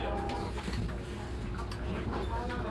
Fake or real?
real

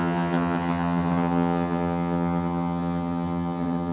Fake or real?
fake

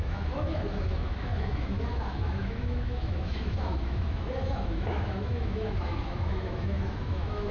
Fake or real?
fake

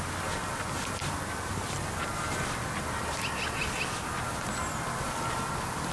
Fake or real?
real